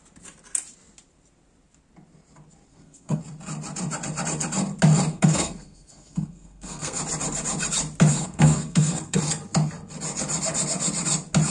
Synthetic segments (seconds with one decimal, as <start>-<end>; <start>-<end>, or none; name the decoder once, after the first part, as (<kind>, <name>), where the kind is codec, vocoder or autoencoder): 2.7-3.2 (codec, SNAC); 5.1-7.0; 8.1-9.2